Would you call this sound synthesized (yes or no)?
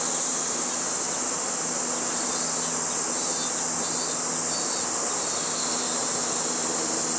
no